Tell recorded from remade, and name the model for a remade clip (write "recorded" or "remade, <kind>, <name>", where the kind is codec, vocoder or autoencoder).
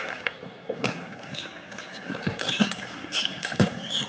remade, codec, SNAC